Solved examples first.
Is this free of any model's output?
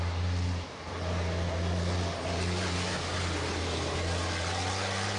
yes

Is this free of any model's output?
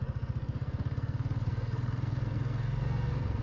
no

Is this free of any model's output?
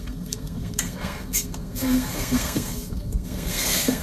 no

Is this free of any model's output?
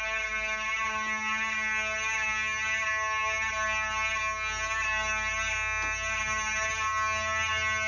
yes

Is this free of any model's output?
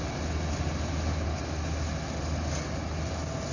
yes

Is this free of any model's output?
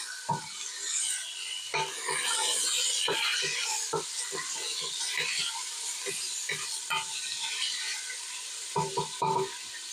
yes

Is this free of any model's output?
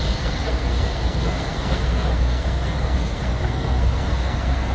no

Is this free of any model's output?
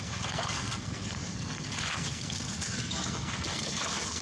no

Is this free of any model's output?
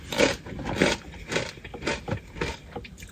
yes